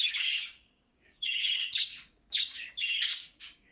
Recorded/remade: remade